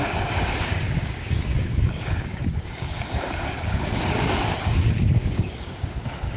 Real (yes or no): no